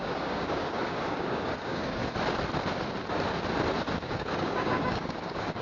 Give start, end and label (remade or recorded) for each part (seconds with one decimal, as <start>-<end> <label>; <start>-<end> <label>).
0.0-2.0 remade; 2.0-4.0 recorded; 4.0-5.6 remade